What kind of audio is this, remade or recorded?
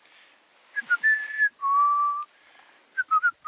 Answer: recorded